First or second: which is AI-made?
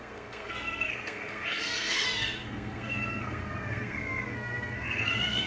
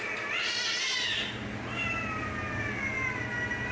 first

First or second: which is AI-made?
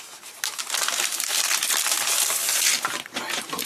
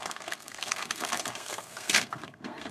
second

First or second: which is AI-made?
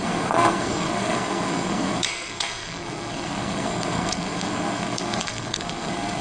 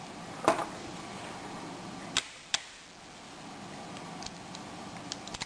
first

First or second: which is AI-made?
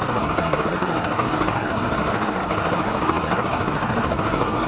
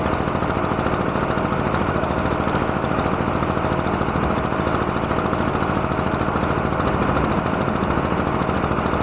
first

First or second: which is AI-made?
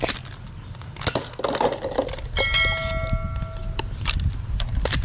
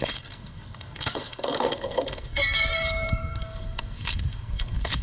second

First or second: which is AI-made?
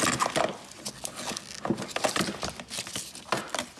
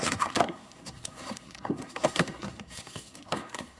second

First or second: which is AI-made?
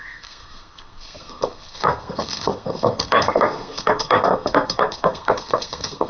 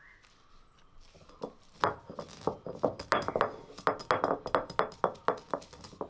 first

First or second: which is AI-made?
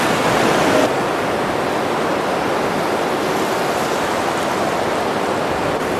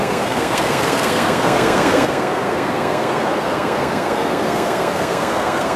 second